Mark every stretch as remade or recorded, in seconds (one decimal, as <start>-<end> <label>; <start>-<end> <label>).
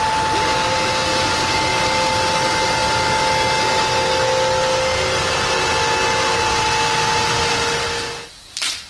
0.0-8.9 recorded